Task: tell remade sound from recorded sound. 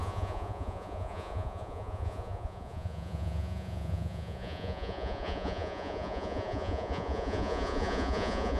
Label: remade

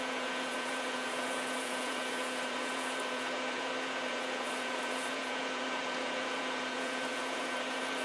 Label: remade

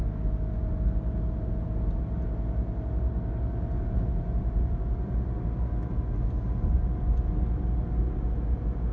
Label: recorded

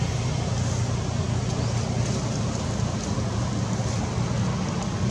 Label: recorded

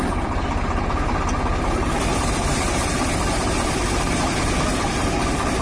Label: recorded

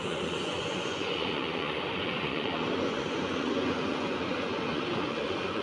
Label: remade